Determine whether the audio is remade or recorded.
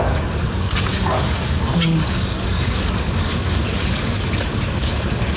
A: remade